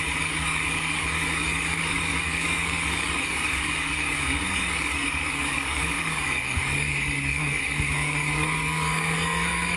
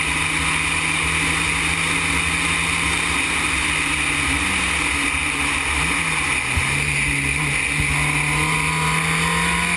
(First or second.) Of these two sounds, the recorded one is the second